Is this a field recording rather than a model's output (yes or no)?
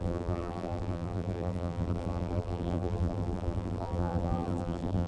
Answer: no